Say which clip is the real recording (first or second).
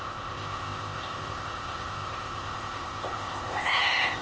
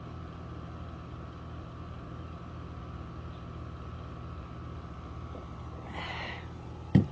second